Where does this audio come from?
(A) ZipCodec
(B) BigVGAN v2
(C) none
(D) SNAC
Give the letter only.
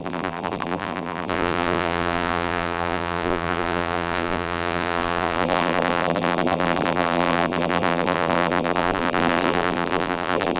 B